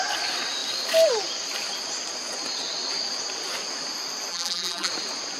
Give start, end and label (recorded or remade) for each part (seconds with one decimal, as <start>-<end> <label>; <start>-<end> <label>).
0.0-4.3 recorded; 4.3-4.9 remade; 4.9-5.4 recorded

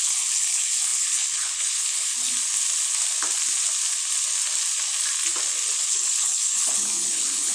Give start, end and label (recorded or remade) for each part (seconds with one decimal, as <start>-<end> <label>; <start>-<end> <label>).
0.0-2.3 remade; 2.3-5.8 recorded; 5.8-7.5 remade

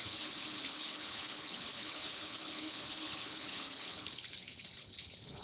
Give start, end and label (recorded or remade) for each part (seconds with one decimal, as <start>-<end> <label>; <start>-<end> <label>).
0.0-5.4 remade

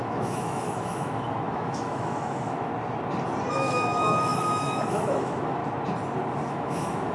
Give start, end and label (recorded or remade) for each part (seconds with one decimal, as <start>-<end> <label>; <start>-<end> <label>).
0.0-2.7 remade; 2.7-3.5 recorded; 3.5-5.6 remade; 5.6-6.5 recorded; 6.5-7.1 remade

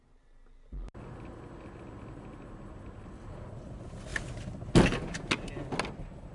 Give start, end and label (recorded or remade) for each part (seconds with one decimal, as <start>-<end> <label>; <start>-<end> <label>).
0.0-6.3 recorded

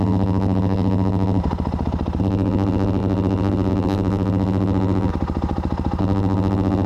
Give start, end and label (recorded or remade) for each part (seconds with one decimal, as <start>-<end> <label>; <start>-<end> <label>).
0.0-1.4 remade; 1.4-2.2 recorded; 2.2-5.1 remade; 5.1-6.0 recorded; 6.0-6.9 remade

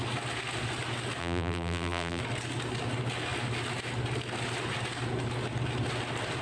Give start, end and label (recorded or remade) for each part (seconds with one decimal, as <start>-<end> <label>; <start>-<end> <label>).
0.0-1.2 recorded; 1.2-2.2 remade; 2.2-6.4 recorded

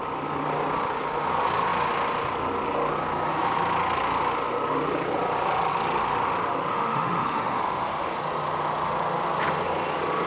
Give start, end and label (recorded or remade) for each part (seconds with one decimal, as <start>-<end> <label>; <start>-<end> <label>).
0.0-6.7 recorded; 6.7-8.2 remade; 8.2-10.3 recorded